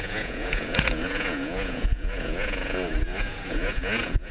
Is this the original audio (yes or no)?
no